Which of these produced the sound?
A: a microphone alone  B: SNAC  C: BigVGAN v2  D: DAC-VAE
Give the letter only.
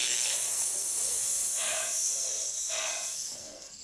B